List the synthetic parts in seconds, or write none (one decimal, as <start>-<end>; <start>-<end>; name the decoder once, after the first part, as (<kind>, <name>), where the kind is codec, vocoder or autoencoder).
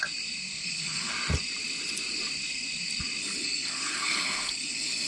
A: 0.6-1.1 (codec, HILCodec); 3.2-5.1